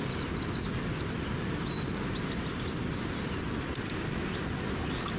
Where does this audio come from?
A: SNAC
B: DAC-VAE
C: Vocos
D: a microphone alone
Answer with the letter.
D